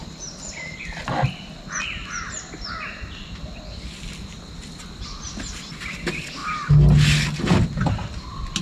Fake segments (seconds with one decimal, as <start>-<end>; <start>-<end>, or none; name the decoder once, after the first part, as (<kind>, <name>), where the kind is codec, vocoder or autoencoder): none